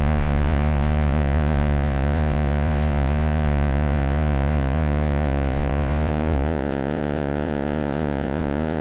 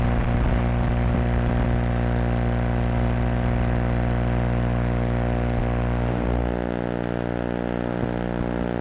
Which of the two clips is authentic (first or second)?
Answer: second